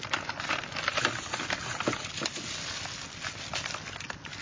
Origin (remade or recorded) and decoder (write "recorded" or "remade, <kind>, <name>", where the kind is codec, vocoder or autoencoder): recorded